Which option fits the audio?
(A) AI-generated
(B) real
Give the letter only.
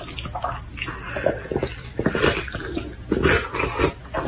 B